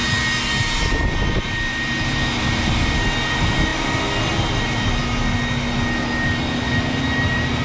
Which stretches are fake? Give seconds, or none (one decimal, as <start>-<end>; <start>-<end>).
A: none